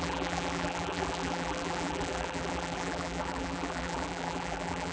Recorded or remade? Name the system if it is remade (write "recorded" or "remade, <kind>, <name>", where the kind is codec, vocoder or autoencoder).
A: remade, vocoder, BigVGAN v2